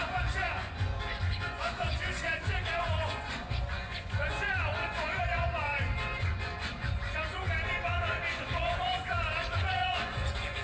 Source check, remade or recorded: remade